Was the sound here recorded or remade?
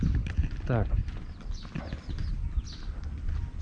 recorded